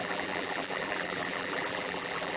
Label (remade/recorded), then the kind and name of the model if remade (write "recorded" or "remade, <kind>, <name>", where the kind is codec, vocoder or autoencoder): remade, vocoder, BigVGAN v2